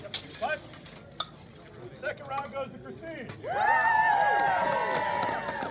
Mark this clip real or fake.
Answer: real